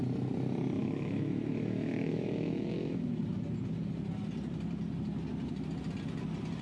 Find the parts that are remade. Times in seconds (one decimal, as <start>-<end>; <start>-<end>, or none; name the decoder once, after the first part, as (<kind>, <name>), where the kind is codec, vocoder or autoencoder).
0.8-3.2 (autoencoder, DAC-VAE)